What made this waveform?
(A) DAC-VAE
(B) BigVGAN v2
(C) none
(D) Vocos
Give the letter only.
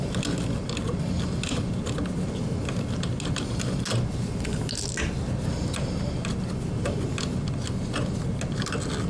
C